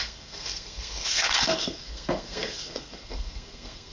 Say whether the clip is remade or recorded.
remade